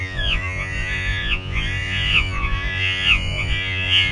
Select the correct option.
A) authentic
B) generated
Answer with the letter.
B